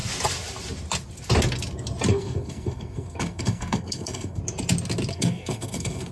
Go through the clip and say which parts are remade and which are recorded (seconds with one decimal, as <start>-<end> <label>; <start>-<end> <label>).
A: 0.0-2.1 recorded; 2.1-4.4 remade; 4.4-5.1 recorded; 5.1-6.1 remade